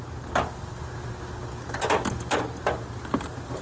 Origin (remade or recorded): recorded